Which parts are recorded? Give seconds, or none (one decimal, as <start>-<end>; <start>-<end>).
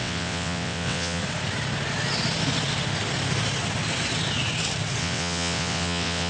1.2-5.0